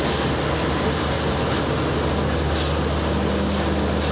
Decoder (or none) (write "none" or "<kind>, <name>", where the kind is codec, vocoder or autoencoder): none